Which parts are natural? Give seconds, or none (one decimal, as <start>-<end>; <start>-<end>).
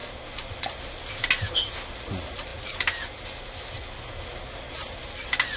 0.0-5.6